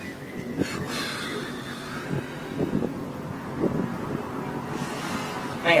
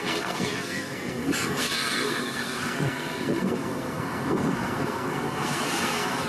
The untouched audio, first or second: first